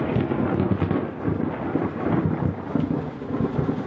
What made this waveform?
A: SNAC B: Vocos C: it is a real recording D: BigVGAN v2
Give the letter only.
C